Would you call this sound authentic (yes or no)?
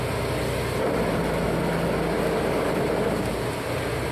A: yes